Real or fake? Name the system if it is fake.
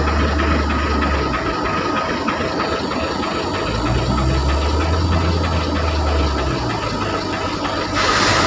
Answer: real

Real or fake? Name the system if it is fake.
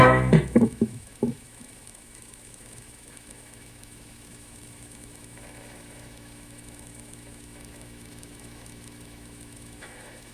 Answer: fake, autoencoder, DAC-VAE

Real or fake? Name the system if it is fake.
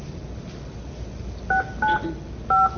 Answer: real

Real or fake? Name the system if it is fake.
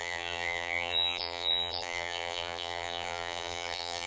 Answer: fake, vocoder, BigVGAN v2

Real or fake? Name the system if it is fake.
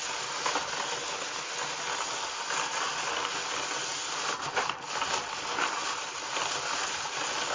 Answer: real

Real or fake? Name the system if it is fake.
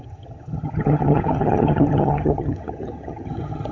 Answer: fake, vocoder, HiFi-GAN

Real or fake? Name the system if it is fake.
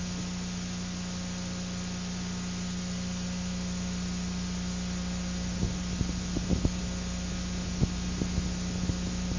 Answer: real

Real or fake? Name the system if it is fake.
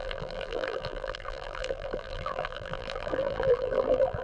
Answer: fake, vocoder, BigVGAN v2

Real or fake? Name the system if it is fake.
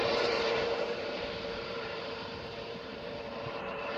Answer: fake, vocoder, BigVGAN v2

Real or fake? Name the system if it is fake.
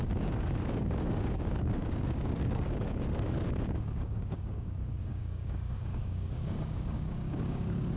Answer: fake, codec, DAC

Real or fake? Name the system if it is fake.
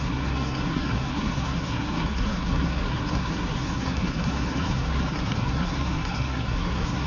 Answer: fake, codec, SNAC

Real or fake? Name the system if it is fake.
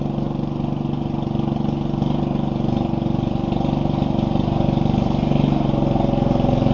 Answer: real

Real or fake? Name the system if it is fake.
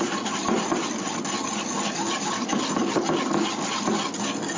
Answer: real